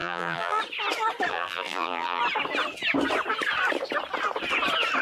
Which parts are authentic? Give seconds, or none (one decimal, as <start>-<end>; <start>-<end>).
0.6-1.3; 2.2-5.0